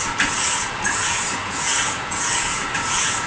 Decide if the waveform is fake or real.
fake